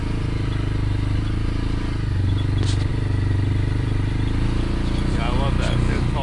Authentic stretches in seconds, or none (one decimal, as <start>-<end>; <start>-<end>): 0.0-6.2